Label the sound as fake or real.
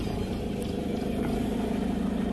real